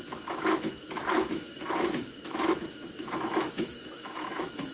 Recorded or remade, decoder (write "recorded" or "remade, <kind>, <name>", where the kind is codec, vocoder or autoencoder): remade, autoencoder, DAC-VAE